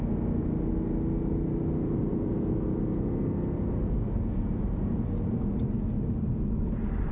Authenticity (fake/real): real